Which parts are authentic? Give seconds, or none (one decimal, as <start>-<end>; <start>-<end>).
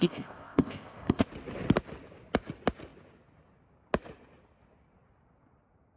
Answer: 1.3-6.0